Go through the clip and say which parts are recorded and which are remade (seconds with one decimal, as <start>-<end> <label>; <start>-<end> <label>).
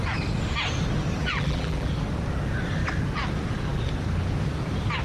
0.0-1.2 recorded; 1.2-1.9 remade; 1.9-5.0 recorded